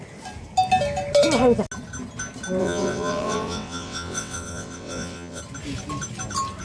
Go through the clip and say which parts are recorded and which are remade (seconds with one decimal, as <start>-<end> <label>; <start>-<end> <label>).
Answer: 0.0-2.6 recorded; 2.6-5.4 remade; 5.4-6.6 recorded